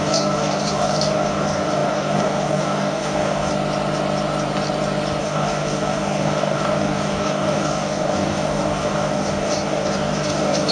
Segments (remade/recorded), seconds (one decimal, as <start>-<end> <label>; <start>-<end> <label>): 0.0-3.5 remade; 3.5-5.2 recorded; 5.2-10.7 remade